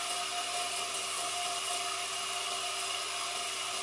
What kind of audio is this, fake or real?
real